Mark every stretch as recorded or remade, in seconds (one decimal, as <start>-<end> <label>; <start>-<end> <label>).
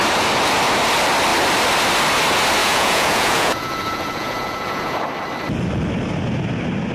0.0-2.6 recorded; 2.6-5.0 remade; 5.0-6.9 recorded